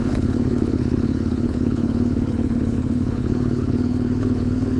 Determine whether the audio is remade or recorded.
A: remade